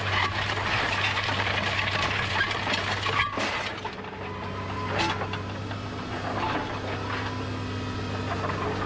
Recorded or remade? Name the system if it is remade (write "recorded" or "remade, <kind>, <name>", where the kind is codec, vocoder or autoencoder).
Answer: recorded